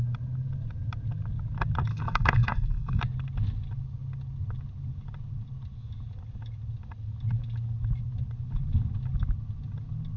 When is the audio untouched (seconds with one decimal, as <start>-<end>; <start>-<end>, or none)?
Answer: 0.0-1.9; 3.0-10.2